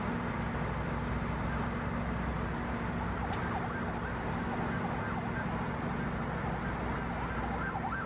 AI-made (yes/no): no